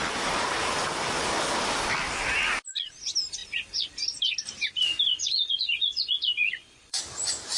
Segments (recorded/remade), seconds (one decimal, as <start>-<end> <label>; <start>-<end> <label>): 0.0-5.1 recorded; 5.1-7.0 remade; 7.0-7.6 recorded